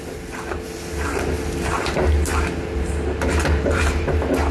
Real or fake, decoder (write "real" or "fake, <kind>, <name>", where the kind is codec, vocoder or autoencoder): real